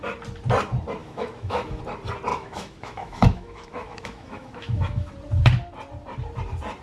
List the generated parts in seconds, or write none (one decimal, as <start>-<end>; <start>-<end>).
1.0-1.8; 2.3-5.1